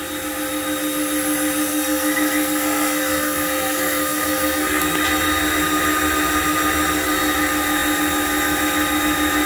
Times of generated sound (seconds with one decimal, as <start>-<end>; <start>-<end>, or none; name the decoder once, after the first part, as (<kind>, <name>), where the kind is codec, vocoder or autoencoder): 1.7-4.8 (codec, SNAC)